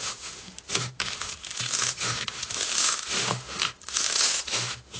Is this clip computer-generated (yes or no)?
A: yes